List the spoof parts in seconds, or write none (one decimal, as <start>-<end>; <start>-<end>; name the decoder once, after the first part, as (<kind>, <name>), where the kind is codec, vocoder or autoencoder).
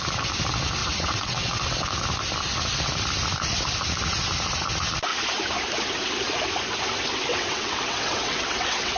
0.8-1.7 (vocoder, WaveNeXt); 7.3-9.0